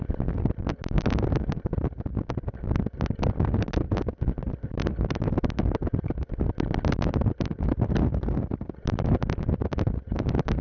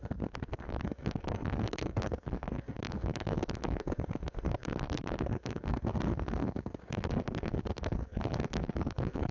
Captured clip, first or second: first